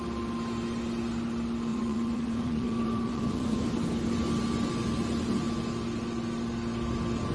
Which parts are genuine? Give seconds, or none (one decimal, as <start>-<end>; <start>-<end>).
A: 0.0-1.7; 3.7-7.3